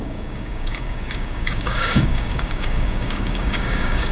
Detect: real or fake fake